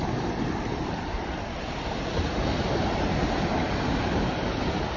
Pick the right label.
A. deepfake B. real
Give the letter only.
B